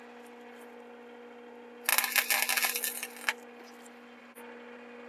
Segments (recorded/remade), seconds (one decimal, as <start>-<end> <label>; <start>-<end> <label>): 0.0-5.1 recorded